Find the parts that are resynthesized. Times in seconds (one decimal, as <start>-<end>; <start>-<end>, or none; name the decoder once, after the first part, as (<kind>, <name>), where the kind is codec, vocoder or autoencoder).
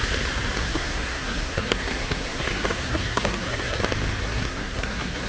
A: 0.6-3.8 (codec, SNAC); 4.2-5.3